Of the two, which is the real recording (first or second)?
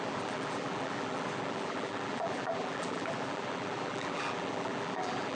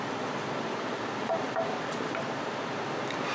second